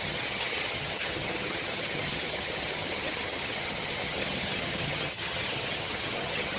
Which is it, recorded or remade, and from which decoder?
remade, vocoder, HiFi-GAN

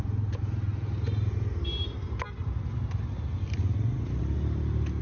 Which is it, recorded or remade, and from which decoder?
recorded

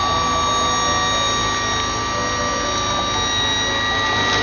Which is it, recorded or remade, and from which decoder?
recorded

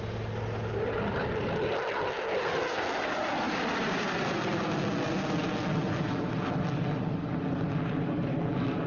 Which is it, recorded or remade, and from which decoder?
recorded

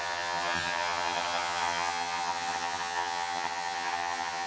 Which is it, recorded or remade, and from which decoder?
remade, vocoder, HiFi-GAN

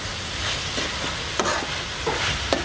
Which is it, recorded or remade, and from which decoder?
recorded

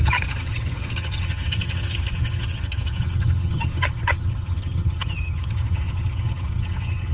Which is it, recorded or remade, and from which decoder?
remade, vocoder, HiFi-GAN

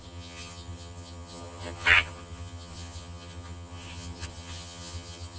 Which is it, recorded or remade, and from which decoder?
remade, vocoder, HiFi-GAN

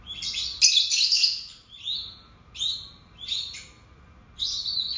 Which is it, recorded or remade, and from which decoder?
recorded